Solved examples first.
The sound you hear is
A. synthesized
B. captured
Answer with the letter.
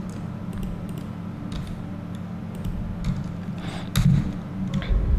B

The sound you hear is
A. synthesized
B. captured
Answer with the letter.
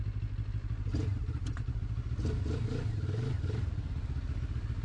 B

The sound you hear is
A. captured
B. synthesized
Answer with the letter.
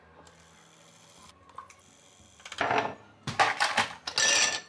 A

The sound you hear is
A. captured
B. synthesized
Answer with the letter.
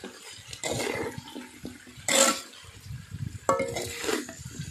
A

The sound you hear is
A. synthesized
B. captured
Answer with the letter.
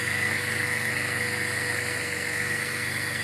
A